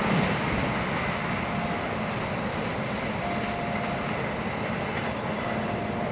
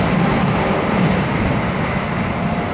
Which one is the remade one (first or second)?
second